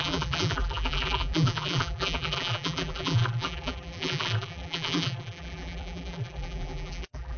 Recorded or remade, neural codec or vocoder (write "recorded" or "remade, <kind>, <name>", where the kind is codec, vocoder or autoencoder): remade, vocoder, BigVGAN v2